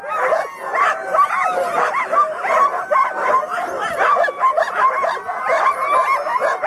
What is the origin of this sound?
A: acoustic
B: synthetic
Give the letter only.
A